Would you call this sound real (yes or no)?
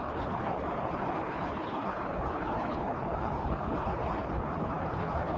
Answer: no